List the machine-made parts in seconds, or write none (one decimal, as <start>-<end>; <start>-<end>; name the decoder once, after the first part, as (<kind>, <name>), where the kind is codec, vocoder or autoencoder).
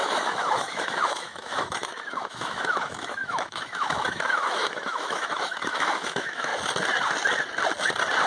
0.0-6.5 (autoencoder, DAC-VAE)